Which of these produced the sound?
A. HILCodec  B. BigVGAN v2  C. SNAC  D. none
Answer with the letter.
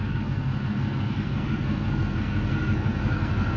C